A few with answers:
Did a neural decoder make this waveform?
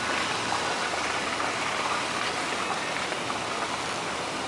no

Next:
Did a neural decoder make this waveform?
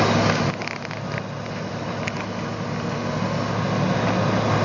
no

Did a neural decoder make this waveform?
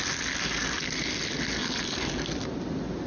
no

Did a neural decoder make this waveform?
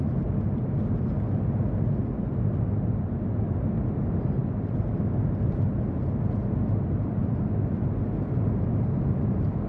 no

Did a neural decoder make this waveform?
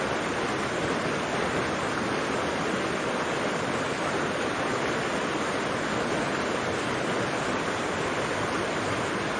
no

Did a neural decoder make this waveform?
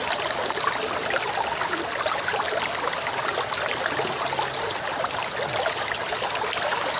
no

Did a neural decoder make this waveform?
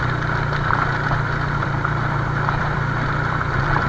yes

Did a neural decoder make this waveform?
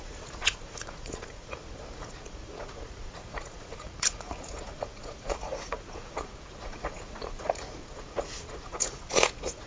yes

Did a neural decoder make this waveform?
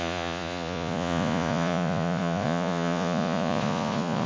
yes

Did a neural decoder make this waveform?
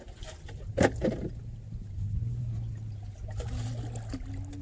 no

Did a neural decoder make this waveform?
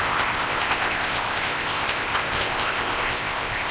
yes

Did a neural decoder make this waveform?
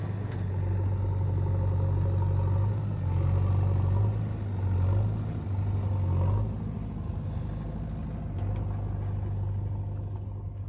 no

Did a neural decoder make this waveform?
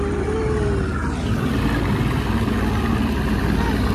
no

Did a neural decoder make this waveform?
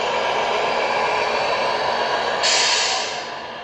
no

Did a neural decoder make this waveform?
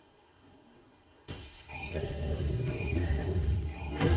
yes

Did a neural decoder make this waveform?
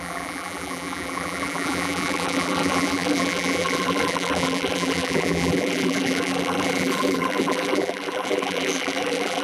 yes